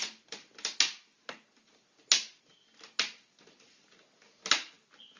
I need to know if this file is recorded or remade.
recorded